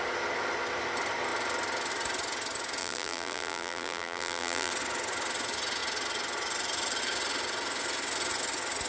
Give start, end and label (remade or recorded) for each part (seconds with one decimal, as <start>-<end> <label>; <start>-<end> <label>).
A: 0.0-2.8 recorded; 2.8-4.7 remade; 4.7-8.9 recorded